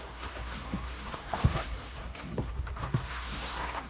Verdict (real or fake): fake